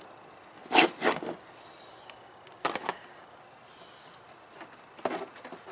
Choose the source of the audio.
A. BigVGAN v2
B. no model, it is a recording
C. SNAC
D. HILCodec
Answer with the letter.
B